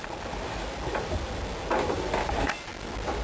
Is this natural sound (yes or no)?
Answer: yes